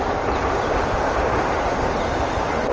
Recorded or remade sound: recorded